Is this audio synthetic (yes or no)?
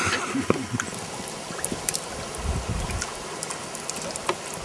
no